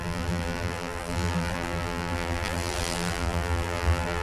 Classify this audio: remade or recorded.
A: remade